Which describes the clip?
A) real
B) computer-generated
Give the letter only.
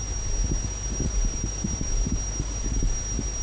B